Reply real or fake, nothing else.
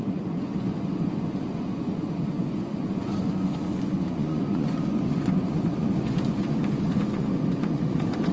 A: fake